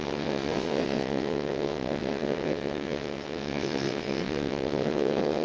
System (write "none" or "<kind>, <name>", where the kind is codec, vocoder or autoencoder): vocoder, WaveNeXt